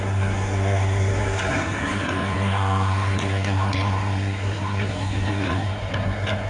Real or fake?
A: fake